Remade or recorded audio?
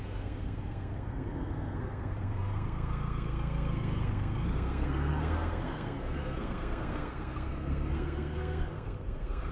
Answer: remade